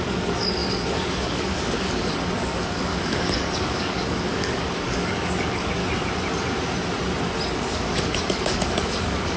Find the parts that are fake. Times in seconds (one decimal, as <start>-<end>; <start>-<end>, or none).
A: 0.0-5.8; 7.5-9.4